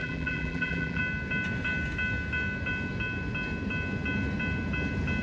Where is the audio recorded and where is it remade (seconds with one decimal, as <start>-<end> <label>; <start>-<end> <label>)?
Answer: 0.0-1.0 remade; 1.0-5.2 recorded

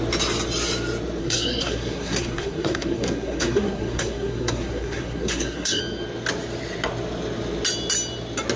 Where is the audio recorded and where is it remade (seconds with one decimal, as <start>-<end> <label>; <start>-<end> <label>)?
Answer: 0.0-1.2 recorded; 1.2-5.8 remade; 5.8-8.6 recorded

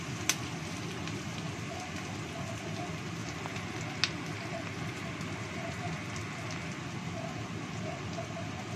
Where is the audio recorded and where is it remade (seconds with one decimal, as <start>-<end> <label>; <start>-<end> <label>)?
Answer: 0.0-8.8 recorded

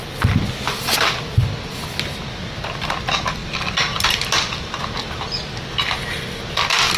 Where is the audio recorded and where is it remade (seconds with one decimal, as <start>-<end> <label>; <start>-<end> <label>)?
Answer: 0.0-7.0 recorded